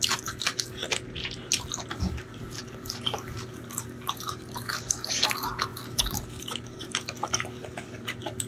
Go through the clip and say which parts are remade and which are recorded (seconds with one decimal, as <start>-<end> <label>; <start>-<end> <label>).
0.0-0.8 remade; 0.8-1.9 recorded; 1.9-8.5 remade